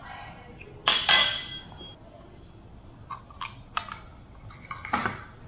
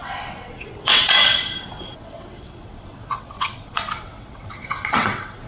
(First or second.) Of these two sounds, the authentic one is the first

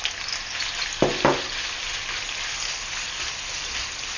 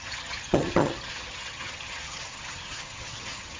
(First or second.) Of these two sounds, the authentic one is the first